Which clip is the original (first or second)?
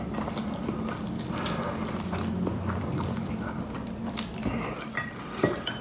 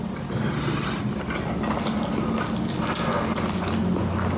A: second